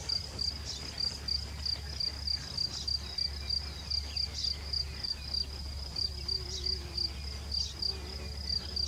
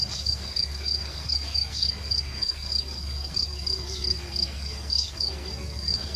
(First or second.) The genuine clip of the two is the first